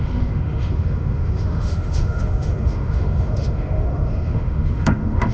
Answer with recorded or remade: remade